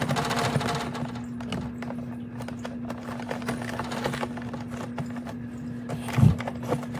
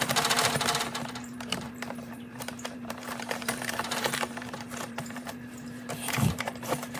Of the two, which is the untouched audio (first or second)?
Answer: first